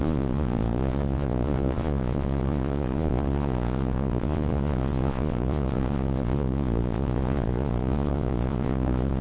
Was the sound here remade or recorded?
remade